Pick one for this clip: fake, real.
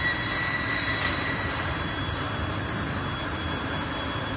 fake